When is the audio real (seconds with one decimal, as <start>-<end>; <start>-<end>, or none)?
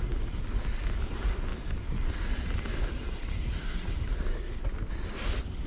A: 0.0-5.7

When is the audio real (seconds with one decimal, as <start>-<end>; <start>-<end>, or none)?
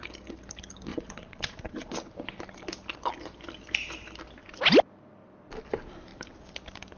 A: 0.0-0.9; 1.9-7.0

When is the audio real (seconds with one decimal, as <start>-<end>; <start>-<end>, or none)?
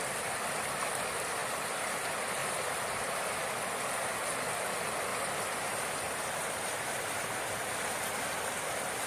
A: 0.0-1.4; 1.9-2.4; 3.4-5.1; 7.7-9.1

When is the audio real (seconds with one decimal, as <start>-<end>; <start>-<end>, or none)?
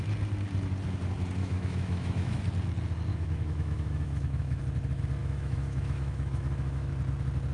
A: 0.0-1.4; 2.4-3.1; 4.6-5.2; 6.9-7.5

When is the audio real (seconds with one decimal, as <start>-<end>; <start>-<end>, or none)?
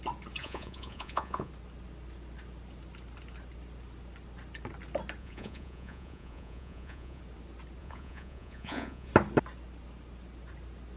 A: 0.0-0.4; 1.5-5.2; 7.2-7.8; 9.1-11.0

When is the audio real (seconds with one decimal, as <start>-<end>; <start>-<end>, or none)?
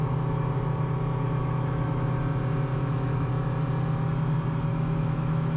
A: 0.0-1.4; 2.1-2.7; 3.3-4.7